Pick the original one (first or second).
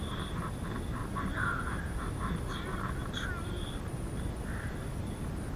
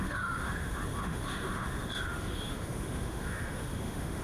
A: first